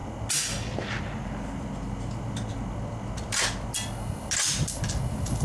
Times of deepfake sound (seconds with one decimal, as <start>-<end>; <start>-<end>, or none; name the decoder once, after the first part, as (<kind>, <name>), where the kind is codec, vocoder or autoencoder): none